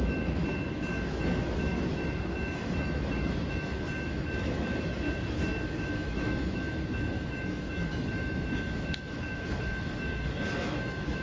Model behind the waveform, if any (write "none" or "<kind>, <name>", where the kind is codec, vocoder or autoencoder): autoencoder, DAC-VAE